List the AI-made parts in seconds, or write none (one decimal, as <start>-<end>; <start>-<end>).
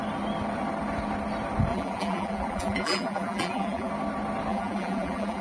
1.7-3.9; 4.5-5.4